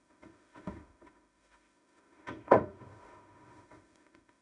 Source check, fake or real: fake